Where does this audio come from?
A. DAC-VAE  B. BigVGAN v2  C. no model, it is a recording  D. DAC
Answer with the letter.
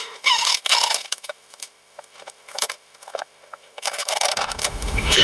A